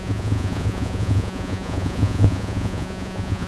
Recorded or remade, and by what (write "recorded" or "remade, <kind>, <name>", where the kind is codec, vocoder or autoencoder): remade, vocoder, Vocos